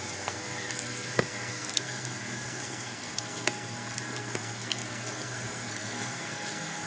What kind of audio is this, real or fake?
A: fake